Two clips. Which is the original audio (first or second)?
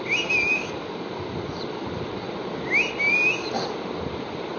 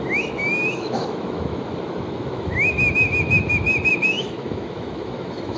first